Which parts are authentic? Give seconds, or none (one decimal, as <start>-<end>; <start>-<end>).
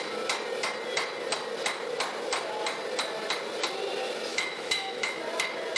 0.0-4.3; 5.2-5.8